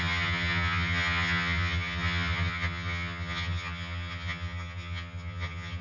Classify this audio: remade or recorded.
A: remade